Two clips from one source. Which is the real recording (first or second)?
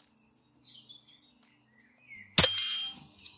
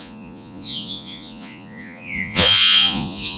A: first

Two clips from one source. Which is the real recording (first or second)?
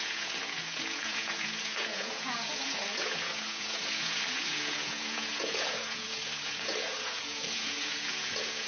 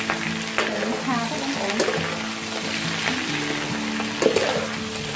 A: second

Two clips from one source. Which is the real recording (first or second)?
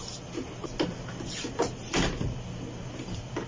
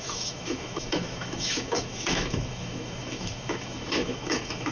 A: first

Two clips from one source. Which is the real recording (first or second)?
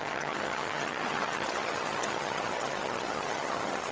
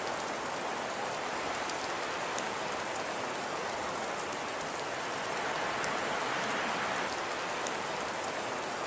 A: second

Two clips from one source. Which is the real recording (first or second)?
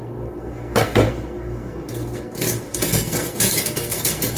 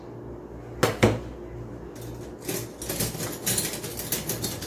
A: second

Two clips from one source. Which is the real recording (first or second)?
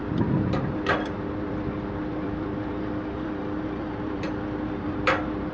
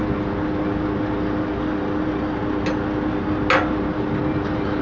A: second